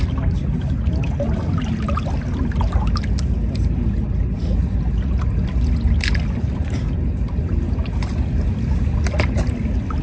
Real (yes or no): yes